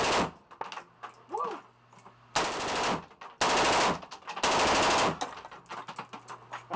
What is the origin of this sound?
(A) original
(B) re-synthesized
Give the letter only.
A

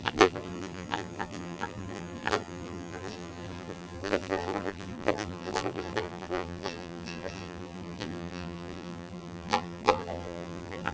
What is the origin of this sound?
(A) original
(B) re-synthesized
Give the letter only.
B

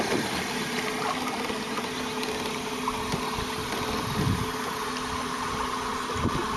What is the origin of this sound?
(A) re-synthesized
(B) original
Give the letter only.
B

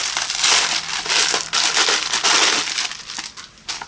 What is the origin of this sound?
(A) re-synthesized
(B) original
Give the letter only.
B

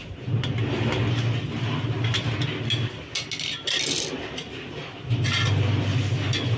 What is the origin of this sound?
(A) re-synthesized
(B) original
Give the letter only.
B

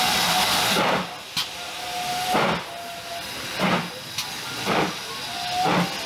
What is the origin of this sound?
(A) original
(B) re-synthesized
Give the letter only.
A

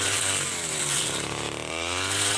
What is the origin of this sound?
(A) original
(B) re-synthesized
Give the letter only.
A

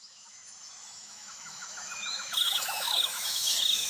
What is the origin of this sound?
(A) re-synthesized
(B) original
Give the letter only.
A